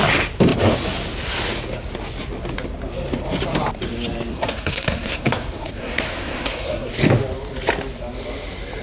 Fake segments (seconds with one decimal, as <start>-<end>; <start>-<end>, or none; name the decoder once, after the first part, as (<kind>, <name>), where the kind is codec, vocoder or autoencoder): 4.3-6.9 (codec, SNAC)